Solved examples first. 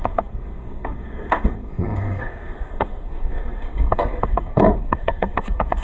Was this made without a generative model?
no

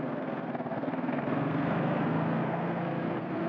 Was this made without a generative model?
no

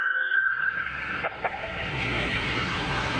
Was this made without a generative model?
no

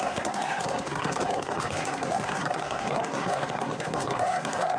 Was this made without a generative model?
no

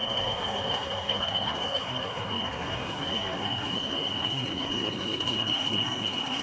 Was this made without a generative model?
no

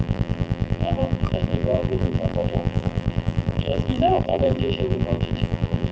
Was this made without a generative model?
no